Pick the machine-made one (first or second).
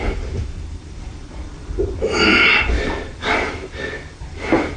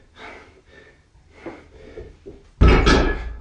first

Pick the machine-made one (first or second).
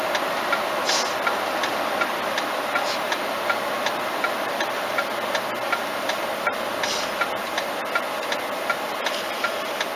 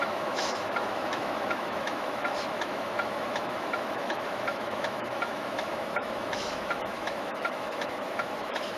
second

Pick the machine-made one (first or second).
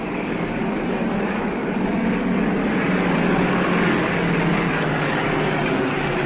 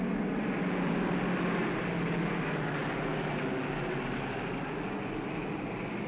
first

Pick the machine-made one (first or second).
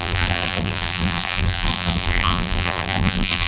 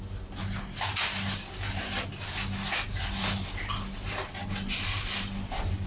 first